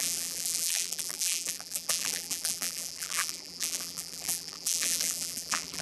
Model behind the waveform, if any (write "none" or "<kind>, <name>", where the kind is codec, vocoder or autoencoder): vocoder, BigVGAN v2